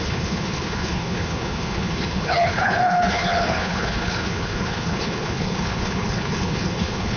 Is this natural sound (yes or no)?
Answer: no